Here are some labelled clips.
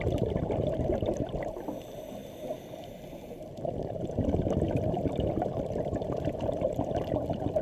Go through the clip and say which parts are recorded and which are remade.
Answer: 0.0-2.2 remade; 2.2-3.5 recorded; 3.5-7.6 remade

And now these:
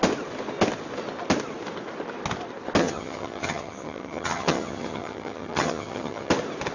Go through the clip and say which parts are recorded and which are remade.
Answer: 0.0-2.8 recorded; 2.8-6.3 remade; 6.3-6.7 recorded

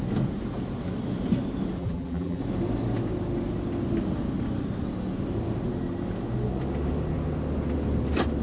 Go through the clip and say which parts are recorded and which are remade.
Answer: 0.0-1.8 recorded; 1.8-2.4 remade; 2.4-8.4 recorded

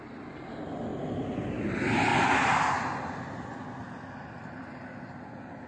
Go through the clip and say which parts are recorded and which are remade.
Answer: 0.0-5.7 recorded